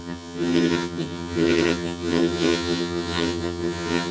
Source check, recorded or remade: remade